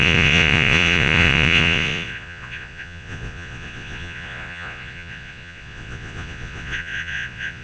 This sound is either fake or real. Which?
fake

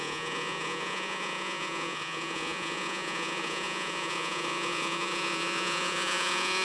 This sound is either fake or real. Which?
fake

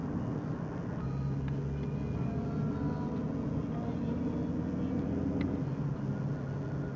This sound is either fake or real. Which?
real